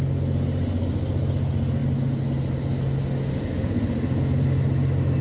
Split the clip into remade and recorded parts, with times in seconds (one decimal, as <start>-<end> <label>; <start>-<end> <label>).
0.0-5.2 recorded

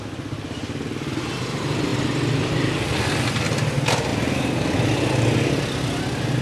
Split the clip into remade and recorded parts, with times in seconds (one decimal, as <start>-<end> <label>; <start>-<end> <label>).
0.0-4.1 recorded; 4.1-5.8 remade; 5.8-6.4 recorded

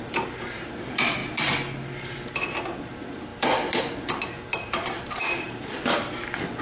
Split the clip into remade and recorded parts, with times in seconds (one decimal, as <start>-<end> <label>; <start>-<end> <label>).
0.0-1.2 remade; 1.2-2.8 recorded; 2.8-6.6 remade

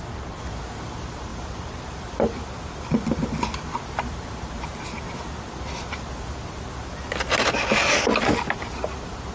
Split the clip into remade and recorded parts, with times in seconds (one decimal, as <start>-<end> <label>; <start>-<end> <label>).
0.0-1.3 recorded; 1.3-2.0 remade; 2.0-9.3 recorded

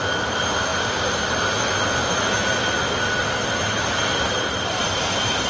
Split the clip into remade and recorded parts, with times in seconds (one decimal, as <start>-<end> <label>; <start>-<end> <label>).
0.0-0.7 recorded; 0.7-1.4 remade; 1.4-2.0 recorded; 2.0-2.6 remade; 2.6-3.2 recorded; 3.2-4.8 remade; 4.8-5.5 recorded

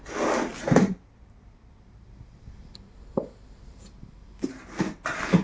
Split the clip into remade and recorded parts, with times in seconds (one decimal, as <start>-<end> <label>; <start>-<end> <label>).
0.0-5.4 recorded

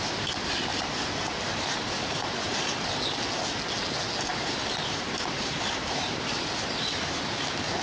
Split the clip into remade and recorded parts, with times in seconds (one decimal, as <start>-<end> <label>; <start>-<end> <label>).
0.0-0.7 recorded; 0.7-2.9 remade; 2.9-4.3 recorded; 4.3-6.5 remade; 6.5-7.8 recorded

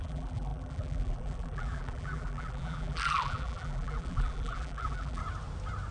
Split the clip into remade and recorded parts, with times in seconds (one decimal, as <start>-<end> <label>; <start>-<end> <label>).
0.0-5.2 remade; 5.2-5.9 recorded